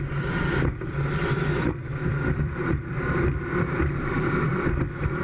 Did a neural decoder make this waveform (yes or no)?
yes